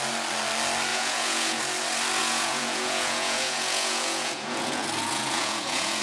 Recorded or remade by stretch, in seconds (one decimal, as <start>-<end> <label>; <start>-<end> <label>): 0.0-0.9 recorded; 0.9-1.6 remade; 1.6-2.2 recorded; 2.2-6.0 remade